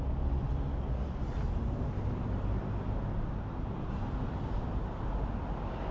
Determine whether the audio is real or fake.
real